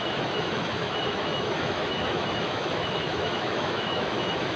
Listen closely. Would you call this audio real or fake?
fake